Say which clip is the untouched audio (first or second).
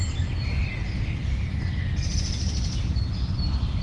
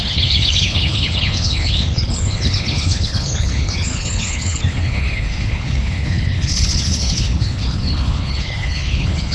first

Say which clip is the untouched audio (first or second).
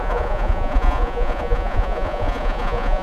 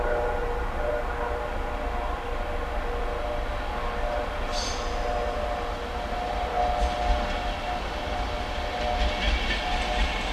second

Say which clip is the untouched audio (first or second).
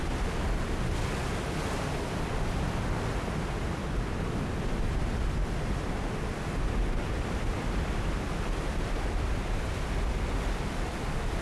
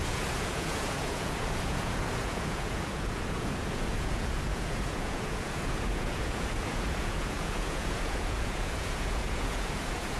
first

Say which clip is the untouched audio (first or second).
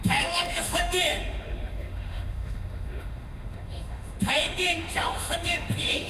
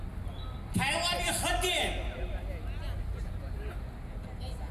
second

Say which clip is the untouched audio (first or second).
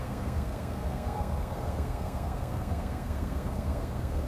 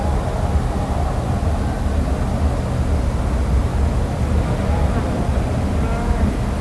second